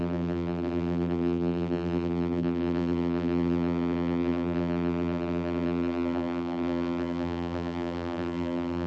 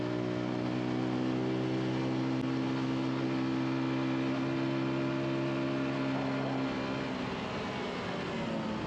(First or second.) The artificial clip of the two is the first